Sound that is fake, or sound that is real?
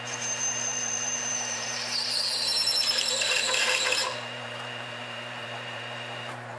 fake